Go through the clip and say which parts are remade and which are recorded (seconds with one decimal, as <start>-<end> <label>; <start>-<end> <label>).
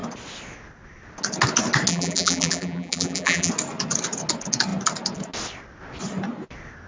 0.0-1.9 recorded; 1.9-3.5 remade; 3.5-6.9 recorded